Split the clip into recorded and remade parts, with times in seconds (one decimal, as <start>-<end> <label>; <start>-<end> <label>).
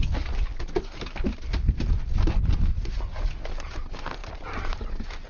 0.0-5.3 recorded